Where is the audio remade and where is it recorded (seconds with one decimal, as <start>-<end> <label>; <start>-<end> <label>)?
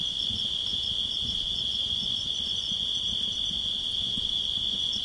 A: 0.0-2.9 remade; 2.9-3.9 recorded; 3.9-5.0 remade